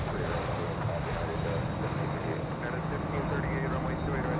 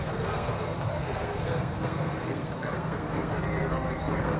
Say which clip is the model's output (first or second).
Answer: second